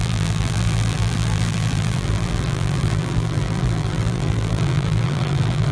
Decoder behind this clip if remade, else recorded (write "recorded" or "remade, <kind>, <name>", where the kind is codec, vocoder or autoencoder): remade, vocoder, BigVGAN v2